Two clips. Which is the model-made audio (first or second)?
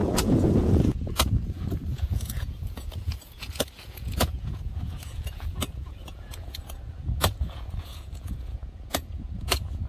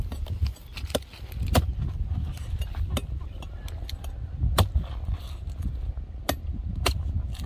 first